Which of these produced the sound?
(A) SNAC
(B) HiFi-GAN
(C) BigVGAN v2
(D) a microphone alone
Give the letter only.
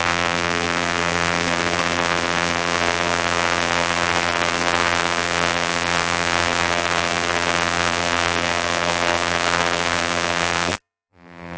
C